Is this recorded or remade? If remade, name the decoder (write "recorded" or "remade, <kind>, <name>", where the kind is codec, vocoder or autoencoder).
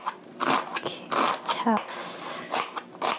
recorded